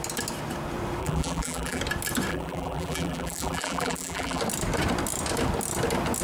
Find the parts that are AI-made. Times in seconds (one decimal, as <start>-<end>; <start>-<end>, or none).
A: 1.0-1.8; 2.3-4.4